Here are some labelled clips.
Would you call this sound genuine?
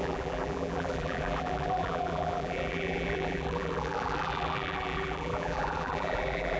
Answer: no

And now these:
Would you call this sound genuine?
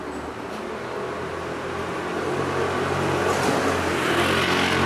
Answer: yes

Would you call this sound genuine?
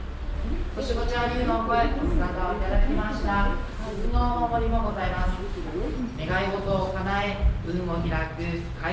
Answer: yes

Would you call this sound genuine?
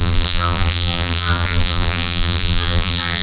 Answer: no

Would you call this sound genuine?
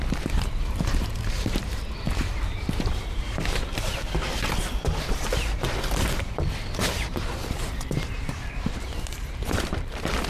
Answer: no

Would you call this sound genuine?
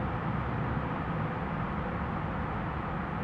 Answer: yes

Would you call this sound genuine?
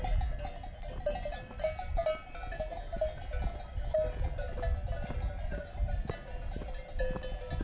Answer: yes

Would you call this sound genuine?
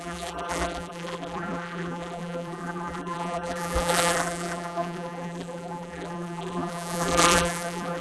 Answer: no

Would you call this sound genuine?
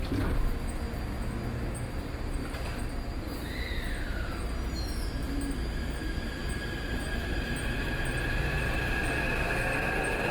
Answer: yes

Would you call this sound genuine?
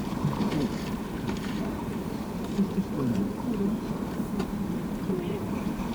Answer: no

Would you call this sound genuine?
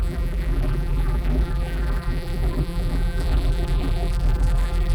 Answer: no